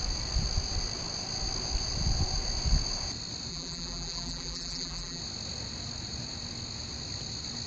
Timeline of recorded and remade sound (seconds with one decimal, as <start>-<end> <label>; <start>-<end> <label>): 0.0-3.5 recorded; 3.5-5.2 remade; 5.2-7.7 recorded